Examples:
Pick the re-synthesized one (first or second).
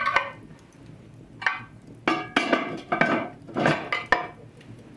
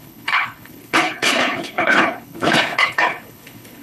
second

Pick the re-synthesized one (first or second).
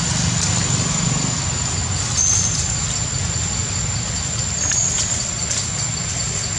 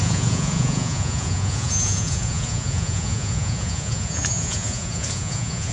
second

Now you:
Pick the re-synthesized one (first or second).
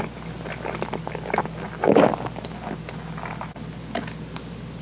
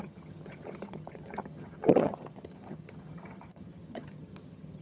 second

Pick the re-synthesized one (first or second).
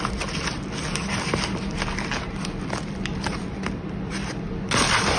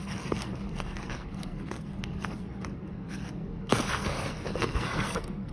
second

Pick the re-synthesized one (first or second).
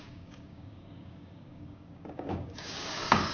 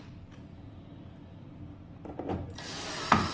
first